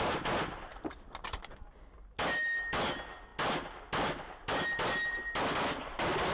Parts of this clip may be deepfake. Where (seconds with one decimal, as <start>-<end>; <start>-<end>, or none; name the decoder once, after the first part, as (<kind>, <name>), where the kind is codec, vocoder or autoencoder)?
none